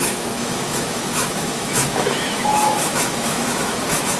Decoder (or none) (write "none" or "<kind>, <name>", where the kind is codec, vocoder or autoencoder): autoencoder, DAC-VAE